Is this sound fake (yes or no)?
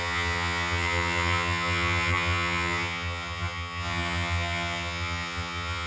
yes